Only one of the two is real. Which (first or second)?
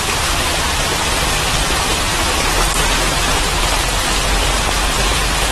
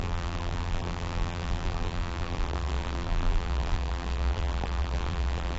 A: first